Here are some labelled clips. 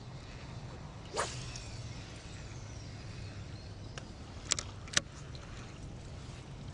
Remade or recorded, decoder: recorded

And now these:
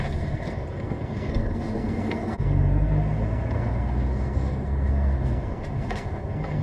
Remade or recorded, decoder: remade, codec, SNAC